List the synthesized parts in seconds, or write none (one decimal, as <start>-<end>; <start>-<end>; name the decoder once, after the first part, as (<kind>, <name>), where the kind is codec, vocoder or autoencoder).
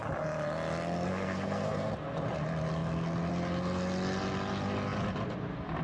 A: 1.1-1.9 (codec, SNAC)